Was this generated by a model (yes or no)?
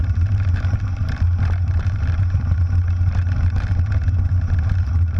yes